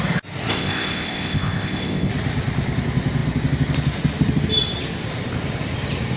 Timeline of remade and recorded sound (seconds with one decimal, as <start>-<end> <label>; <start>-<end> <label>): 0.0-0.5 recorded; 0.5-2.1 remade; 2.1-6.2 recorded